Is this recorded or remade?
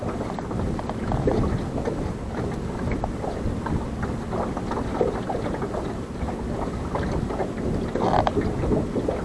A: recorded